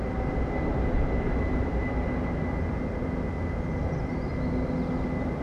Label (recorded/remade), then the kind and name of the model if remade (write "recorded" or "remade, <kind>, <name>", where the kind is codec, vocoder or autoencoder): recorded